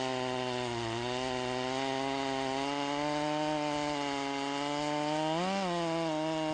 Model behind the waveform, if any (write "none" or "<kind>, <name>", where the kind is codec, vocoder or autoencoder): none